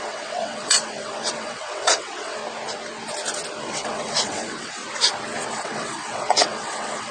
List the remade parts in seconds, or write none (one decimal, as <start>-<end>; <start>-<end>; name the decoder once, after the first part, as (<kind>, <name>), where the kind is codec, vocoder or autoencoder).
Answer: 0.0-2.4 (vocoder, WaveNeXt); 3.6-4.8; 5.5-7.1